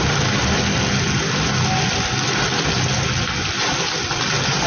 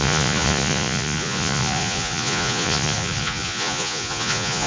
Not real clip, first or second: second